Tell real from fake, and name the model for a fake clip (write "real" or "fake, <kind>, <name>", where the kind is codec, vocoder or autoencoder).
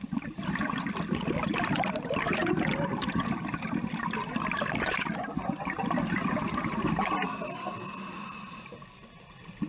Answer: real